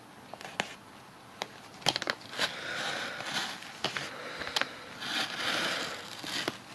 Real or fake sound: real